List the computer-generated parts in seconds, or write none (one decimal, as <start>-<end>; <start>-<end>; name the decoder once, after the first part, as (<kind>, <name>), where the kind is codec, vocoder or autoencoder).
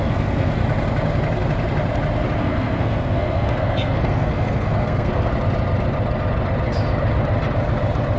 0.0-0.6 (codec, SNAC); 2.4-5.3